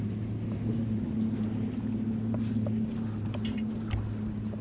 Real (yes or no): yes